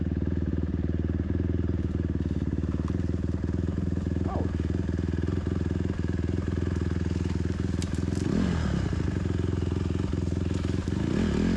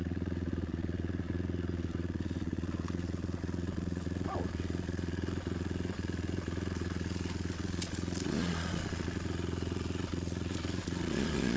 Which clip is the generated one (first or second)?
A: second